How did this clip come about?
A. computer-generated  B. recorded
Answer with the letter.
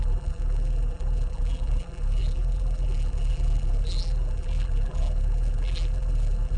A